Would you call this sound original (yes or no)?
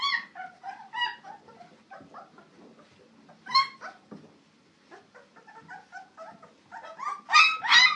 yes